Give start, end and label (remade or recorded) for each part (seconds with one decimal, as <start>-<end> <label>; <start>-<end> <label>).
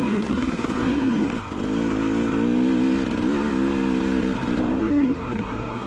0.0-1.3 remade; 1.3-4.8 recorded; 4.8-5.9 remade